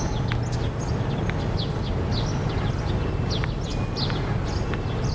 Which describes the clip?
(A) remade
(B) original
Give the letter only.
B